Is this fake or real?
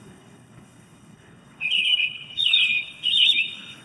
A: fake